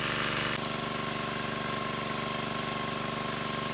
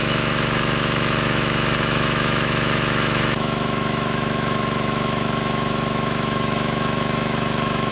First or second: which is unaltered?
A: first